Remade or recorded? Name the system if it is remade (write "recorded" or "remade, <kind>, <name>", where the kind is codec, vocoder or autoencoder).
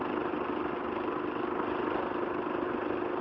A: recorded